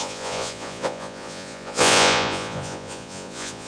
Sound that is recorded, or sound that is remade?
remade